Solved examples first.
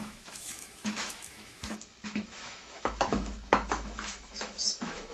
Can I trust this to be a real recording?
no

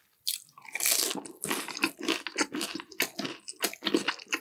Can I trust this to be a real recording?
yes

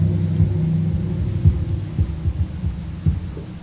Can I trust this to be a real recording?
yes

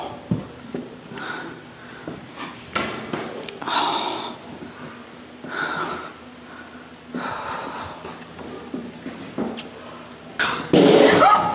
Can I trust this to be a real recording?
yes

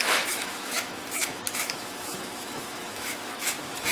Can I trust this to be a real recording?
no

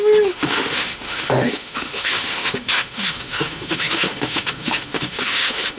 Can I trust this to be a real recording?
no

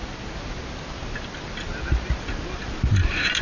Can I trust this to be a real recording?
yes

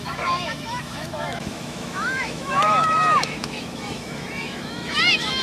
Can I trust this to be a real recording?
no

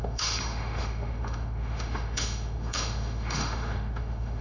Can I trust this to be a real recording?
no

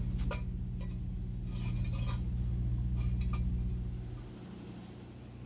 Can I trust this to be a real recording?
yes